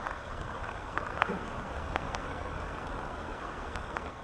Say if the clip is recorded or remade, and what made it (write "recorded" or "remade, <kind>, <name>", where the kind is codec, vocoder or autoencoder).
remade, codec, SNAC